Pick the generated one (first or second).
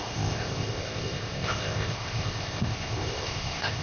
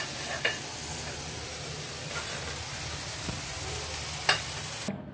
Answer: first